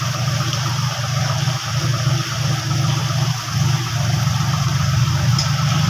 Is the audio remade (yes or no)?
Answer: no